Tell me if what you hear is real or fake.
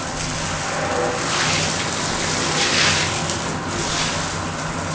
real